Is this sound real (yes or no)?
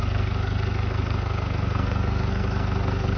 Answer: no